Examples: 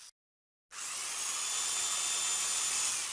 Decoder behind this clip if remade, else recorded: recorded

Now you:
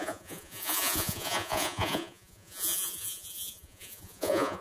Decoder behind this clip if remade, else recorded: remade, vocoder, Vocos